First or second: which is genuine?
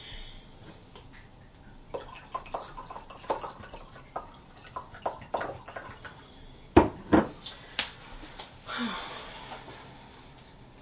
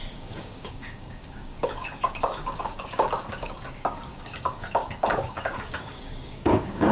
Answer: first